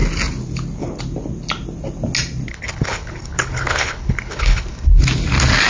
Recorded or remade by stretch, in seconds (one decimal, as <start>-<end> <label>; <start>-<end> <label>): 0.0-2.5 recorded; 2.5-5.0 remade; 5.0-5.7 recorded